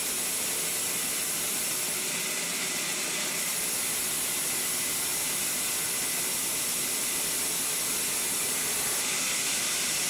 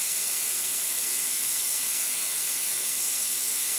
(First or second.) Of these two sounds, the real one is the first